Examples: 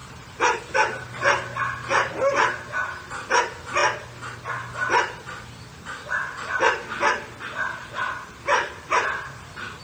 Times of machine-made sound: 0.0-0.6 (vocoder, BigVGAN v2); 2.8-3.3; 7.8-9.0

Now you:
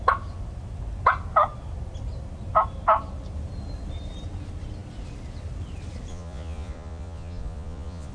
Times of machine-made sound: 6.1-8.1 (vocoder, Vocos)

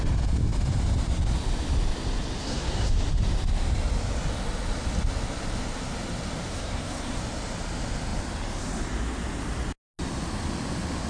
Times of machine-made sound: 2.4-2.9 (codec, SNAC); 6.5-7.2

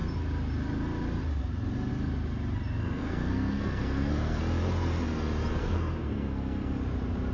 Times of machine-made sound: 2.8-4.4 (codec, SNAC); 5.6-6.7

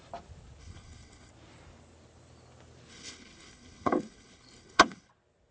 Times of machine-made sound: 0.6-1.3 (codec, HILCodec); 2.9-5.1